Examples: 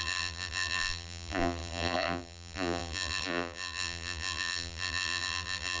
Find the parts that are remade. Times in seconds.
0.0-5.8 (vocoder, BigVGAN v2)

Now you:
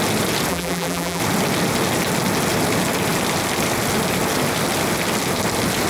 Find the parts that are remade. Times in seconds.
0.5-1.2 (vocoder, BigVGAN v2)

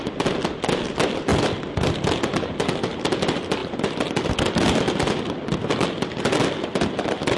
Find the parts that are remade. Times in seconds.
1.3-2.1 (vocoder, BigVGAN v2); 3.6-6.2